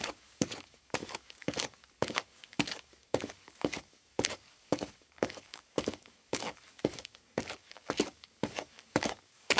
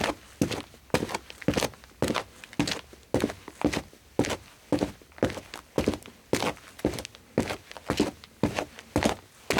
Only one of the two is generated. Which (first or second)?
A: first